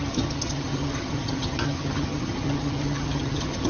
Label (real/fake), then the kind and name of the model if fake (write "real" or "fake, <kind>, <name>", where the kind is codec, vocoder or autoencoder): fake, vocoder, HiFi-GAN